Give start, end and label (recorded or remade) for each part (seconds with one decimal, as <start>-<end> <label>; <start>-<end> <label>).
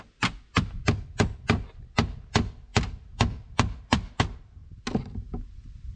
0.0-6.0 recorded